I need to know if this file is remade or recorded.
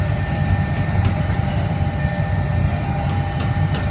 remade